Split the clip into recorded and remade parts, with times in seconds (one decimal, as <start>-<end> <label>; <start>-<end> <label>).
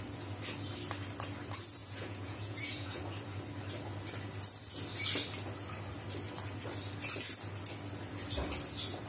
0.0-1.8 recorded; 1.8-3.0 remade; 3.0-9.1 recorded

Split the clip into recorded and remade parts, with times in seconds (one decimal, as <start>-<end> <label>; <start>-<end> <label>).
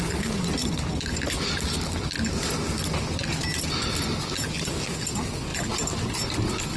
0.0-6.8 recorded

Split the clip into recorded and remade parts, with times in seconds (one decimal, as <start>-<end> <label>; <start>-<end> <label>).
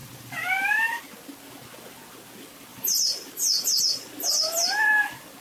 0.0-1.0 remade; 1.0-2.7 recorded; 2.7-3.8 remade; 3.8-5.4 recorded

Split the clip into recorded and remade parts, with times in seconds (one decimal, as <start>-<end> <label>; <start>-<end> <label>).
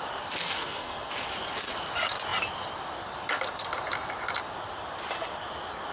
0.0-0.4 recorded; 0.4-1.1 remade; 1.1-5.9 recorded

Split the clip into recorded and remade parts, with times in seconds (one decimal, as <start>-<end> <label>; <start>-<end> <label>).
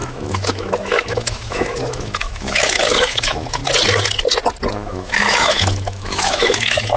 0.0-3.6 remade; 3.6-4.7 recorded; 4.7-7.0 remade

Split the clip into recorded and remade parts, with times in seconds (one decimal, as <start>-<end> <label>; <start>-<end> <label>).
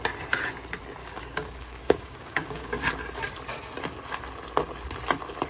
0.0-1.0 recorded; 1.0-2.9 remade; 2.9-5.5 recorded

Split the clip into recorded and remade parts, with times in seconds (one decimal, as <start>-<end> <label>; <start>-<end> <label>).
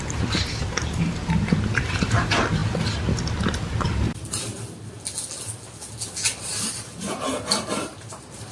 0.0-2.6 remade; 2.6-3.5 recorded; 3.5-4.5 remade; 4.5-6.4 recorded; 6.4-8.5 remade